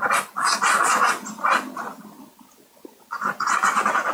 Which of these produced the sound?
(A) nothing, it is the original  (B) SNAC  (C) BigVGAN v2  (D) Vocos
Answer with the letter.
A